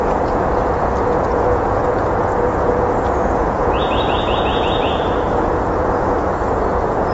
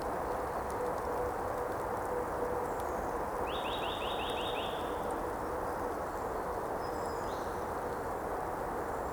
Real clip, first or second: second